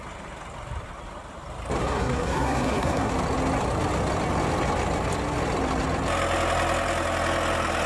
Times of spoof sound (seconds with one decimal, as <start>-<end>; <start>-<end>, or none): 1.8-3.1